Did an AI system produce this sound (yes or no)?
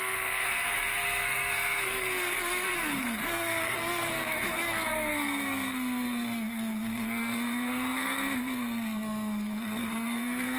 yes